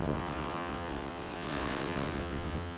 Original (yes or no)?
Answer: no